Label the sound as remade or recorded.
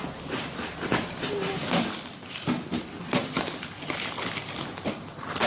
recorded